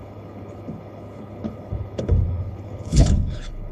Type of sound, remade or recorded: remade